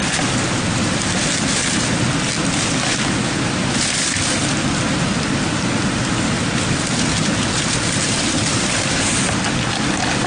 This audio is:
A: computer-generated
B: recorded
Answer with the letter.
B